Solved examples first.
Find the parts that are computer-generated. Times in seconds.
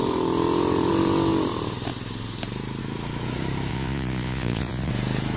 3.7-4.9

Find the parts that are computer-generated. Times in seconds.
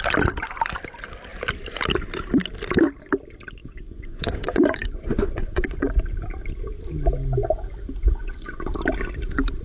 3.6-5.9; 8.0-8.7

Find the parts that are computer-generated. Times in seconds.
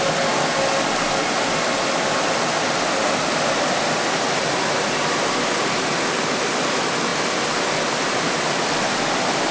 none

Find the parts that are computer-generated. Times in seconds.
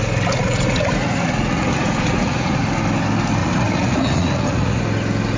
0.4-2.6; 3.4-4.8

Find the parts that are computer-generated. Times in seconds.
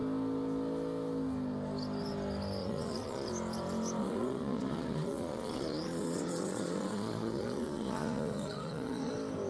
2.6-3.3; 4.0-9.1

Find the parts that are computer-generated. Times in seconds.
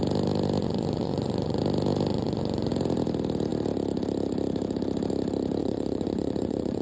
0.6-1.6; 2.1-2.7; 5.6-6.8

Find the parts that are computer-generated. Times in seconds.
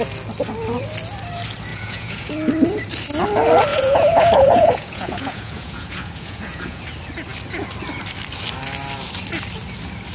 1.7-2.3; 3.7-6.8